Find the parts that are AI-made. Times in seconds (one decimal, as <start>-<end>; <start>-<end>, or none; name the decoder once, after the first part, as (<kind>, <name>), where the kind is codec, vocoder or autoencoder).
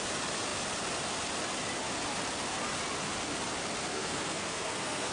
3.9-5.1 (codec, SNAC)